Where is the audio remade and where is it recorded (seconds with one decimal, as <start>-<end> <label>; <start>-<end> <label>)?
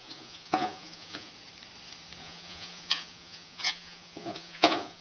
0.0-1.3 remade; 1.3-2.2 recorded; 2.2-5.0 remade